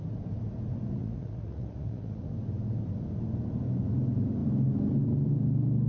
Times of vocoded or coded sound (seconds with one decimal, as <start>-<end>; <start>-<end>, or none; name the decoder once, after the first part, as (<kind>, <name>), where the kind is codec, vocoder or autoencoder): 1.0-2.3 (vocoder, Vocos)